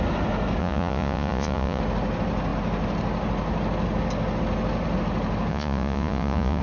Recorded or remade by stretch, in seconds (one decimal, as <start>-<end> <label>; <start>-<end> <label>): 0.0-0.6 recorded; 0.6-1.8 remade; 1.8-5.5 recorded; 5.5-6.6 remade